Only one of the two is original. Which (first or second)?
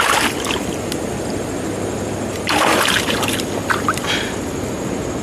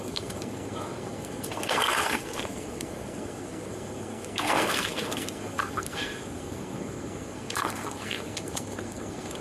first